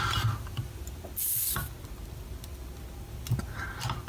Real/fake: real